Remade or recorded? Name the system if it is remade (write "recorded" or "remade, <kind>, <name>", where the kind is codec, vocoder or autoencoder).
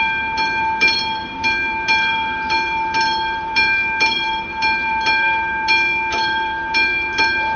remade, vocoder, BigVGAN v2